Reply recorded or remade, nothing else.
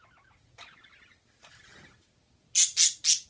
recorded